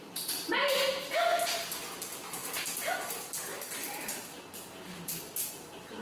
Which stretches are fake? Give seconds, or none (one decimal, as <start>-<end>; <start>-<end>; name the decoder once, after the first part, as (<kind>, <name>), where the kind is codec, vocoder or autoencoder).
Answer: none